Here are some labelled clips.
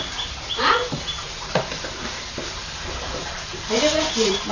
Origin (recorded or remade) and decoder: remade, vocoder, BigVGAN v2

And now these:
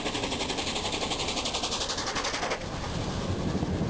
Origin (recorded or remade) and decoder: recorded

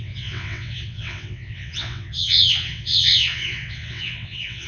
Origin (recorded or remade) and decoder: remade, vocoder, WaveNeXt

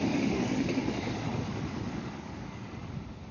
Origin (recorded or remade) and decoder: remade, codec, DAC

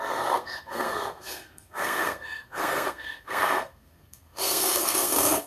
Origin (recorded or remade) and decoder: remade, codec, SNAC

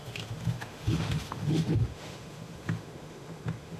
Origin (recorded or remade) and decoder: remade, autoencoder, DAC-VAE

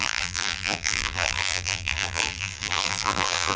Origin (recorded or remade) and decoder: remade, vocoder, BigVGAN v2